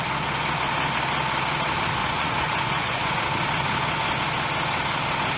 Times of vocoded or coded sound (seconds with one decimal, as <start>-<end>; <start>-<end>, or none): 2.0-3.2